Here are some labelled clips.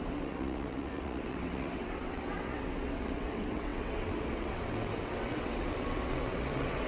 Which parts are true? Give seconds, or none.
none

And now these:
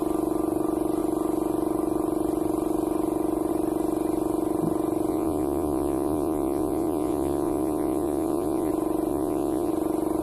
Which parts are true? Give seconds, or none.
0.0-5.1; 8.7-9.1; 9.7-10.2